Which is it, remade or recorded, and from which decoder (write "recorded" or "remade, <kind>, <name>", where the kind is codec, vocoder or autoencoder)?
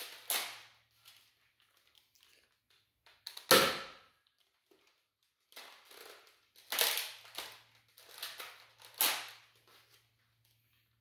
recorded